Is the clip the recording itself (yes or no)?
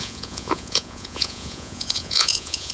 no